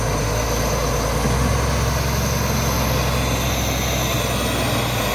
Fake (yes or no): no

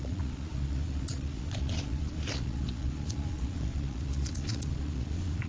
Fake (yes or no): yes